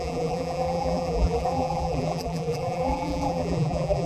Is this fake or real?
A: fake